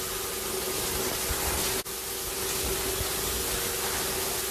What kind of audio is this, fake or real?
real